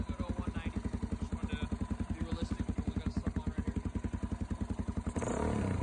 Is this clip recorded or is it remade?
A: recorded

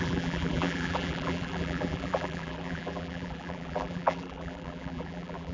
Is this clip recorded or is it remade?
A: remade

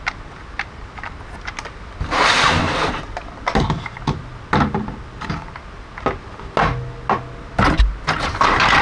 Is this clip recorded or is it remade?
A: recorded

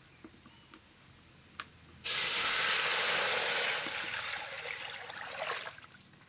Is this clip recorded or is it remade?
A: recorded